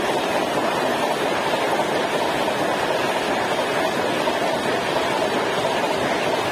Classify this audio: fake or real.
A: real